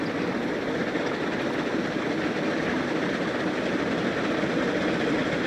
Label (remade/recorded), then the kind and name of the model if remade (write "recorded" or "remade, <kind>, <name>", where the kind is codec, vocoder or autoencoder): recorded